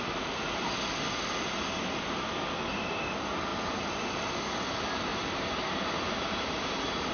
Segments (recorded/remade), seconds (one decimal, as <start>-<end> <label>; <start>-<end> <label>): 0.0-3.5 recorded; 3.5-4.3 remade; 4.3-5.1 recorded; 5.1-6.6 remade; 6.6-7.1 recorded